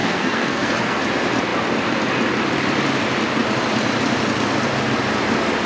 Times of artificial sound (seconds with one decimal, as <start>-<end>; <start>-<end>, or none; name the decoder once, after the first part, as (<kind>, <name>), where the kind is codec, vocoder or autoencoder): 0.0-1.0 (codec, SNAC)